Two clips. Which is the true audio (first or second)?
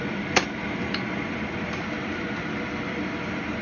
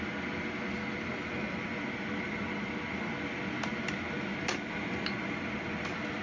second